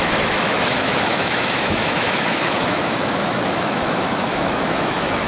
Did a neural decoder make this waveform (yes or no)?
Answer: yes